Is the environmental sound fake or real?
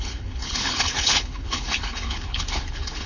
fake